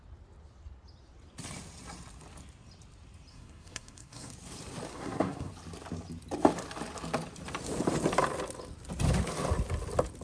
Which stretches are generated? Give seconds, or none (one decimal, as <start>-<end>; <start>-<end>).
3.3-4.3; 4.9-5.5